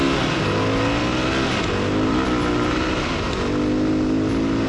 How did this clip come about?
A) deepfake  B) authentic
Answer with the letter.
B